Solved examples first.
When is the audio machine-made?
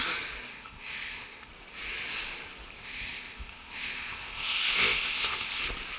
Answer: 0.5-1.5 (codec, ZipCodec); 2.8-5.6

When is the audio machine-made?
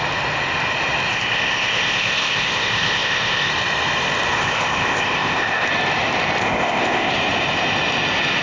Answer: 1.1-3.5 (codec, ZipCodec); 4.3-5.7; 6.4-7.1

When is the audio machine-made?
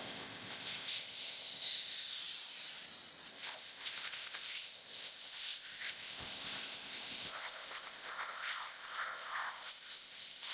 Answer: 0.0-2.2 (codec, ZipCodec); 3.3-10.5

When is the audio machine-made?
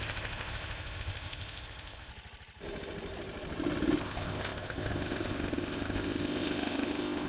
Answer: 0.0-2.1 (codec, ZipCodec); 4.0-7.3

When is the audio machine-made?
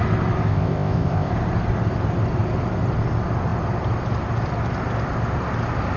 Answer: 0.5-1.3 (codec, ZipCodec)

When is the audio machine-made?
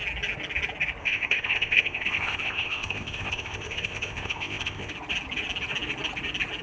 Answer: 1.0-4.9 (codec, ZipCodec)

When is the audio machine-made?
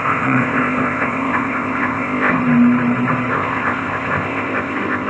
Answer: 0.0-2.4 (codec, ZipCodec); 3.3-5.1